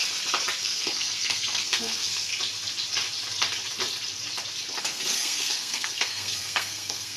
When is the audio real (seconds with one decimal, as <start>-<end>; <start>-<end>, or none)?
0.0-0.6; 2.3-4.8